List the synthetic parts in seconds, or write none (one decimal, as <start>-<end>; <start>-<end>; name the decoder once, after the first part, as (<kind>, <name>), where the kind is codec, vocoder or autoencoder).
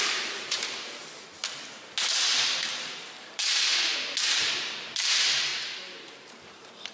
0.0-1.4 (vocoder, BigVGAN v2); 2.1-3.4; 4.4-6.9